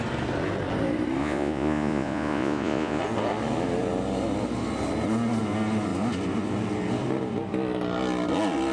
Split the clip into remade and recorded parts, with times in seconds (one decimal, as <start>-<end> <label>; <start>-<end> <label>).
0.0-1.2 recorded; 1.2-3.0 remade; 3.0-8.7 recorded